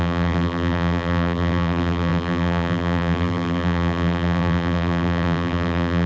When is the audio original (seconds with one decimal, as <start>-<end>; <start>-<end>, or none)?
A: none